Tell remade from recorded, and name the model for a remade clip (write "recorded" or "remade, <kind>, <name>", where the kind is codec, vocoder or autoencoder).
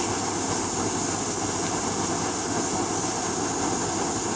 recorded